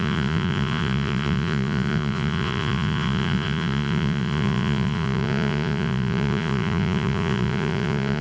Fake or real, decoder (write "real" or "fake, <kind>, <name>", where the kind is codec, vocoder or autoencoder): fake, vocoder, Vocos